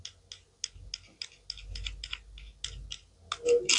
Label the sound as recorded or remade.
recorded